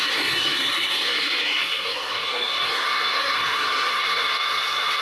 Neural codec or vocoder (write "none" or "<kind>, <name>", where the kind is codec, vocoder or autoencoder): codec, SNAC